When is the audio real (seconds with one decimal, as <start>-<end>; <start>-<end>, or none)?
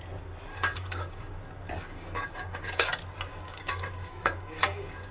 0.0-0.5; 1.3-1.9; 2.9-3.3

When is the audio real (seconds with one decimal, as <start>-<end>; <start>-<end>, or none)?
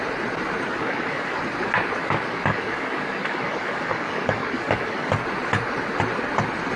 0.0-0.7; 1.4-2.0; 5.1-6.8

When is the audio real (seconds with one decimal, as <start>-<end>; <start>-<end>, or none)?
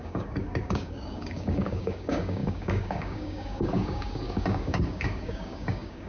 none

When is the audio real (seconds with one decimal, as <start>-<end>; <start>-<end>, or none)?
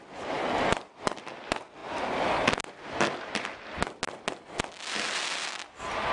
0.0-6.1